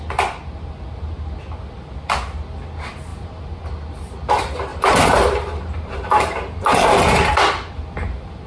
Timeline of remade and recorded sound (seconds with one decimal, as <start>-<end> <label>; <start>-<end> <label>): 0.0-4.7 recorded; 4.7-7.3 remade; 7.3-8.5 recorded